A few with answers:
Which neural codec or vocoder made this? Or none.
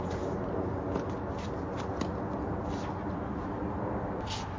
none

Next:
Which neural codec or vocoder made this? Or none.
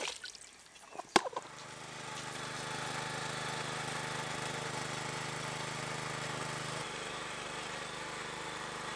none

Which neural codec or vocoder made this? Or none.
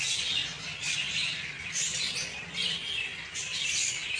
vocoder, BigVGAN v2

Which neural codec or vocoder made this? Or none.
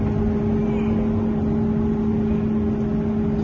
none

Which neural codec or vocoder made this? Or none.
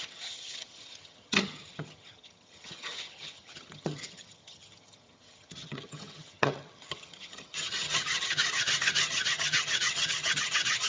vocoder, HiFi-GAN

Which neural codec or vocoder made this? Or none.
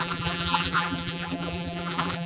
vocoder, BigVGAN v2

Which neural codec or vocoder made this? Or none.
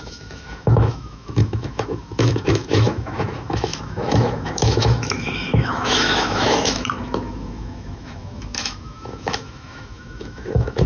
autoencoder, DAC-VAE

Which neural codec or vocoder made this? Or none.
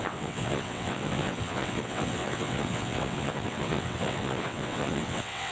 vocoder, WaveNeXt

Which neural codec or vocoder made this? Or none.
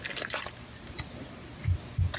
none